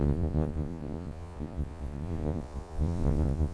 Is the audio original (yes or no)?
no